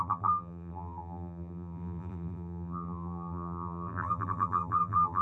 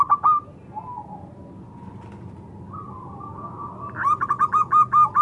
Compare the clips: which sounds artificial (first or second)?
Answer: first